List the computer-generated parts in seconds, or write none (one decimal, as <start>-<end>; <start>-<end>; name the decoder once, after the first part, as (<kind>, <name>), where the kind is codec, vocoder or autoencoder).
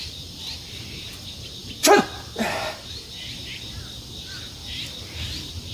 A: none